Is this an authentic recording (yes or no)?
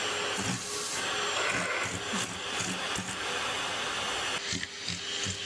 yes